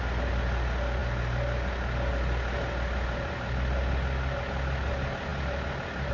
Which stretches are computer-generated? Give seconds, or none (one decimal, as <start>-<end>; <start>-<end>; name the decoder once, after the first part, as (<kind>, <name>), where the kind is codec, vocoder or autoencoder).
none